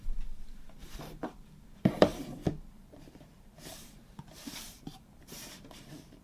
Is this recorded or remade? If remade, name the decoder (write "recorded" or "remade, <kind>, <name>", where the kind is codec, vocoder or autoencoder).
remade, vocoder, BigVGAN v2